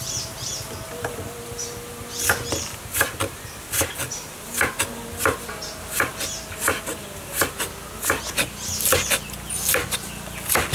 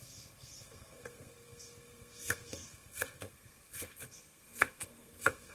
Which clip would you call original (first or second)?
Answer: first